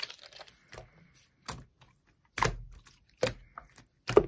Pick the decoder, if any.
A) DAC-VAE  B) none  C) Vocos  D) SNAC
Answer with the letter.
B